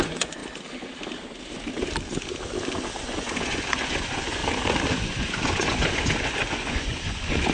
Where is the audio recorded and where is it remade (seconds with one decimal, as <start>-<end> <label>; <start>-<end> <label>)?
0.0-0.4 remade; 0.4-3.0 recorded; 3.0-4.4 remade; 4.4-5.0 recorded; 5.0-7.5 remade